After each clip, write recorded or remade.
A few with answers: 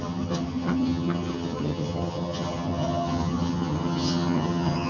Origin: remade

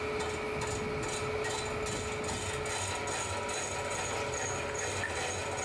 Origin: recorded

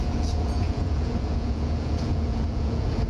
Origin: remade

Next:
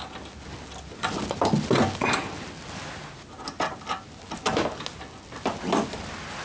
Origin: recorded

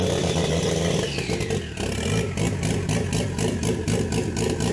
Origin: recorded